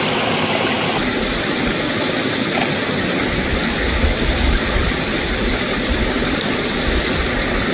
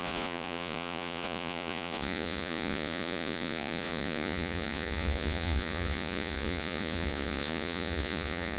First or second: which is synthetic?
second